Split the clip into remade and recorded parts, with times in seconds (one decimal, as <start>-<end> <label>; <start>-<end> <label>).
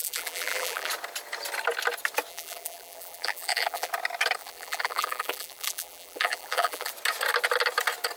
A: 0.0-0.9 remade; 0.9-2.3 recorded; 2.3-3.9 remade; 3.9-4.4 recorded; 4.4-6.9 remade; 6.9-8.2 recorded